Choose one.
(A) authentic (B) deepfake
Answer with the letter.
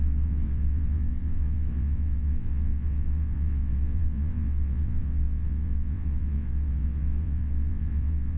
B